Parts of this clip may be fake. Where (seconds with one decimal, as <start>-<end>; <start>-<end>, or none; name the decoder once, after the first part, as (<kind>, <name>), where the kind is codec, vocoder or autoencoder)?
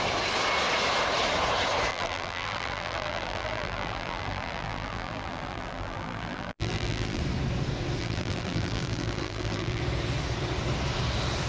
1.9-7.2 (vocoder, BigVGAN v2); 8.0-9.8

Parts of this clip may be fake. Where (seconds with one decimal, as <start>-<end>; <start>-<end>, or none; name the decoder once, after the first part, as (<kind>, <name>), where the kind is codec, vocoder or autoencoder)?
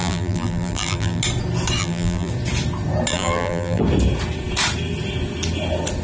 0.0-1.2 (vocoder, BigVGAN v2); 1.8-2.3; 3.1-3.8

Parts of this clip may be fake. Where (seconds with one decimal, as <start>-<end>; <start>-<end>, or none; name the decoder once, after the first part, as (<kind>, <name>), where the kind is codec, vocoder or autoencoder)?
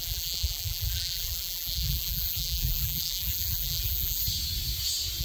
0.0-4.2 (vocoder, BigVGAN v2)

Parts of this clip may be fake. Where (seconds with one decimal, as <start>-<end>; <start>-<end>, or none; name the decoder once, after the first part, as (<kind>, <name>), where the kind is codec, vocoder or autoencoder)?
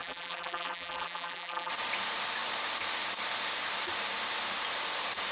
0.0-1.7 (vocoder, BigVGAN v2)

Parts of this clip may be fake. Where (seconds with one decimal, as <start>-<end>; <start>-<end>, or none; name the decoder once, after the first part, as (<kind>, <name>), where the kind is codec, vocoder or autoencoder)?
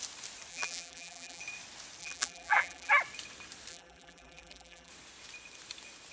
0.5-1.4 (vocoder, BigVGAN v2); 2.0-2.9; 3.7-4.9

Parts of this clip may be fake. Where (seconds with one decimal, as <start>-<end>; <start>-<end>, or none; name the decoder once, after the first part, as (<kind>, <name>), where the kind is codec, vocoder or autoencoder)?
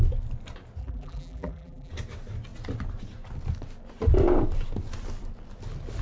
0.8-1.9 (vocoder, BigVGAN v2)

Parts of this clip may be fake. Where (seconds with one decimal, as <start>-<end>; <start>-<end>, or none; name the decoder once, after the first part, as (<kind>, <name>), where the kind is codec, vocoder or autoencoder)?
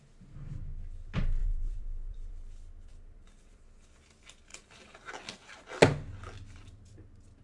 1.4-2.3 (vocoder, BigVGAN v2); 2.9-3.6; 4.5-5.1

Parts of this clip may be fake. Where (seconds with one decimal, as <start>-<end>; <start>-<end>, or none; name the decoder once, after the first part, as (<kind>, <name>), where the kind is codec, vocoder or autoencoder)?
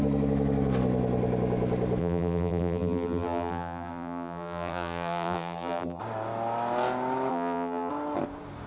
2.0-6.0 (vocoder, BigVGAN v2); 7.3-7.9